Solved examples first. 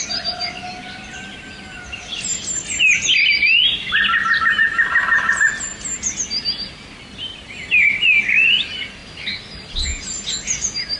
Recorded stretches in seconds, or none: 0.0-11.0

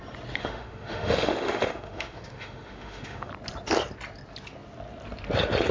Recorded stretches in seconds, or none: 0.0-0.4; 3.3-5.7

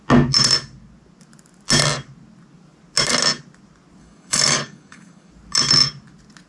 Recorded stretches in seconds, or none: 0.0-4.0; 5.3-6.5